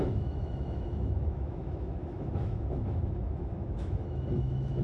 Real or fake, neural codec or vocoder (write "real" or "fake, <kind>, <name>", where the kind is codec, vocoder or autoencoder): fake, autoencoder, DAC-VAE